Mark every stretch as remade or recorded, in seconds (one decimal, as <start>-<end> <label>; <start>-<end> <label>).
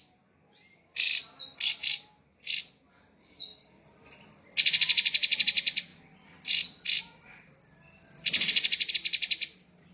0.0-9.9 recorded